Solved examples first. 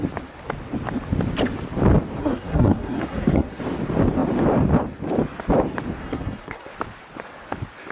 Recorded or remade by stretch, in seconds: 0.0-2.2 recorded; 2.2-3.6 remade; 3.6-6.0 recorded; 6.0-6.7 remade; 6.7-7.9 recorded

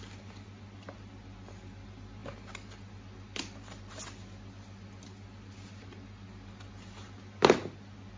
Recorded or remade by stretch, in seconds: 0.0-8.2 recorded